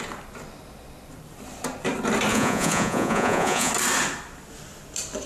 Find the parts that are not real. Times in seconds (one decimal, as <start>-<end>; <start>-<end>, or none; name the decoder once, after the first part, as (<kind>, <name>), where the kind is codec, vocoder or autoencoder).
2.3-3.7 (vocoder, Vocos)